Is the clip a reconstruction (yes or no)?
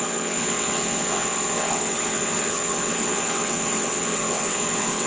yes